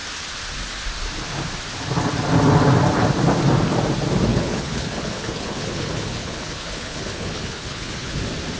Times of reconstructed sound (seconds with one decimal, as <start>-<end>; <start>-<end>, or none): 4.3-8.2

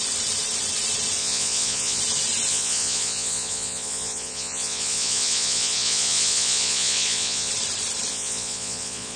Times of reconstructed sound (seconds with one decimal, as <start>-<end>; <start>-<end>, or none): 1.2-2.0; 2.5-7.5; 8.1-9.2

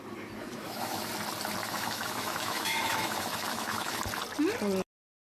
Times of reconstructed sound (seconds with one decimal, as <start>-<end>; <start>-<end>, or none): 0.4-1.1; 1.6-4.0

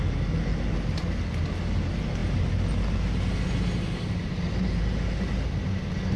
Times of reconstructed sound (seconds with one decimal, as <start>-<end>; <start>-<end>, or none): none

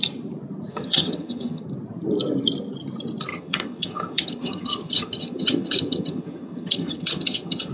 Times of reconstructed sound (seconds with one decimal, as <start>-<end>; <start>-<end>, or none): 0.7-1.6; 3.3-7.7

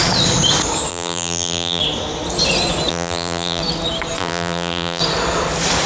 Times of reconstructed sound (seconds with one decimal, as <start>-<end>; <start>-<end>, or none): 0.9-1.8; 2.9-3.6; 4.2-5.0

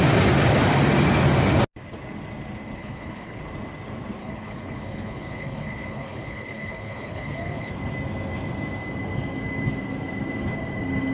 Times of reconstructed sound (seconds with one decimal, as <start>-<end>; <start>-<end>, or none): 2.8-3.4; 4.2-7.7

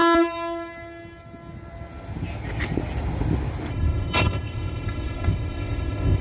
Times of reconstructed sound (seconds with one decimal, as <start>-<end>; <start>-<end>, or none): 3.7-6.2